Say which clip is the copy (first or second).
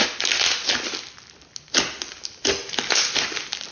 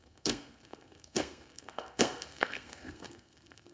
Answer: second